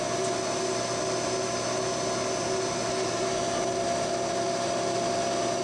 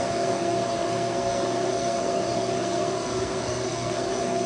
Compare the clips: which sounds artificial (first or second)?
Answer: second